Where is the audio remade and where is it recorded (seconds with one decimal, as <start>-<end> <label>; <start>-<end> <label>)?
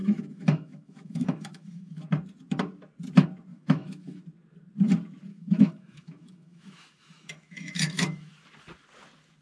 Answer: 0.0-2.1 remade; 2.1-3.5 recorded; 3.5-4.2 remade; 4.2-5.3 recorded; 5.3-8.3 remade; 8.3-9.4 recorded